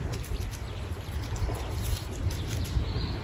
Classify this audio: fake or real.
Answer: real